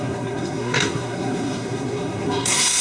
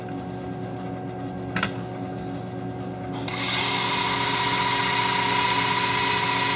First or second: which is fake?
first